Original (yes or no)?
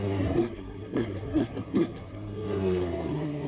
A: no